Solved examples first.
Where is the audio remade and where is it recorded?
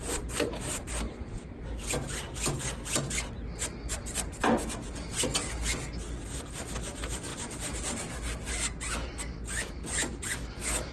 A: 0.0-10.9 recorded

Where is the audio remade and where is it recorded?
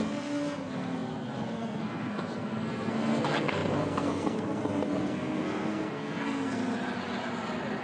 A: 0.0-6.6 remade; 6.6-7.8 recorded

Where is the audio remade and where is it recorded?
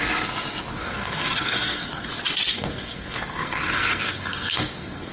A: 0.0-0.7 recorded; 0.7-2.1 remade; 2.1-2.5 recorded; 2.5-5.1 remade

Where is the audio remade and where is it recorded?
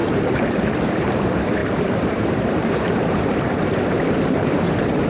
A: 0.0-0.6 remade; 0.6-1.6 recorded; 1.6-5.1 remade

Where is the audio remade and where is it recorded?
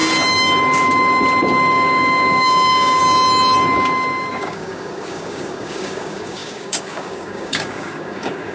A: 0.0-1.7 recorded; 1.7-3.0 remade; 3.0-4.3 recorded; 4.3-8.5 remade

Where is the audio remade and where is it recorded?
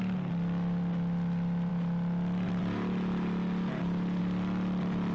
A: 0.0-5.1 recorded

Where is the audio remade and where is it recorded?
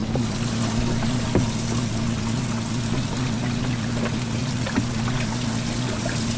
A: 0.0-4.4 recorded; 4.4-4.9 remade; 4.9-6.4 recorded